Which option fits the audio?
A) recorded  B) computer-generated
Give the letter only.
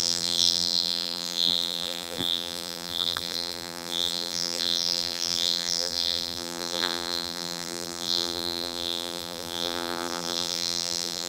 B